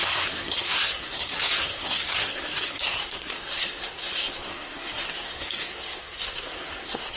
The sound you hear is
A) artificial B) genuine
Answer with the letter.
A